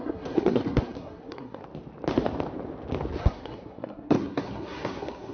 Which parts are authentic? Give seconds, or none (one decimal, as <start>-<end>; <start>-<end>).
1.6-3.2